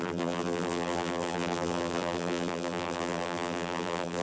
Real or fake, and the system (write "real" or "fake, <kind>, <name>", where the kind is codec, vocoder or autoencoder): fake, vocoder, BigVGAN v2